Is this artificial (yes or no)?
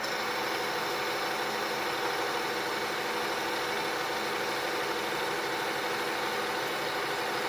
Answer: no